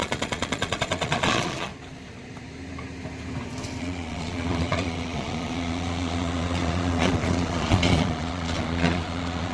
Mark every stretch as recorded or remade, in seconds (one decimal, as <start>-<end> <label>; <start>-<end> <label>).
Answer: 0.0-1.7 remade; 1.7-3.8 recorded; 3.8-9.5 remade